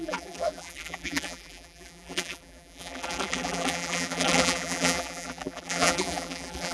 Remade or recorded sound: remade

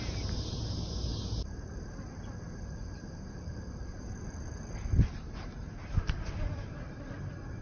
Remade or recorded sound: remade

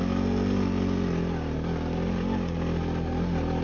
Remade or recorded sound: recorded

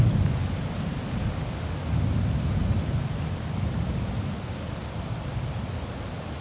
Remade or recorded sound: recorded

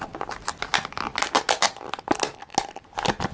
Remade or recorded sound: recorded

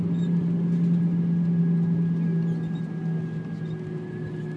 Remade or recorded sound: recorded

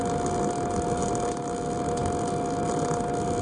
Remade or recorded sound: recorded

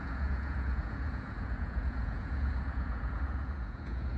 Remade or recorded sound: remade